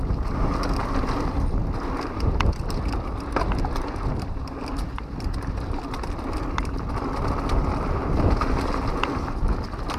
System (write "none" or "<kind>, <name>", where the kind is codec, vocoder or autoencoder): none